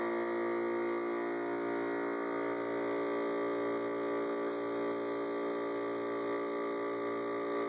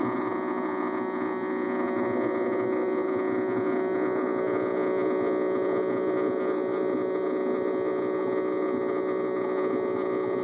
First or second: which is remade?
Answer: second